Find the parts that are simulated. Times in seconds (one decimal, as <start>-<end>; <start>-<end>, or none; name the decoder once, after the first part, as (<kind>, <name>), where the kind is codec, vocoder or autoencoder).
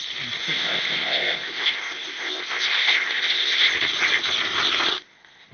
0.4-3.7 (codec, ZipCodec); 4.9-5.5